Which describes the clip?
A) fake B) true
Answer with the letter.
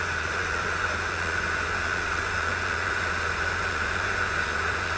A